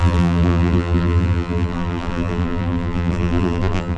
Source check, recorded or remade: remade